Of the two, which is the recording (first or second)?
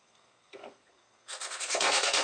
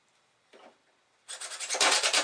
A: second